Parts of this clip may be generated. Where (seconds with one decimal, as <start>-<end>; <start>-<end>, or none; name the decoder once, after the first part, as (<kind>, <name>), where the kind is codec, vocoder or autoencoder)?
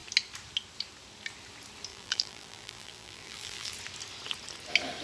1.9-3.7 (vocoder, BigVGAN v2)